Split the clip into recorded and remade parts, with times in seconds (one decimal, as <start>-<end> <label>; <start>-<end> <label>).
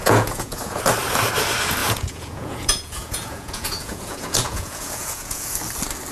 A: 0.0-0.8 remade; 0.8-1.8 recorded; 1.8-5.5 remade; 5.5-6.1 recorded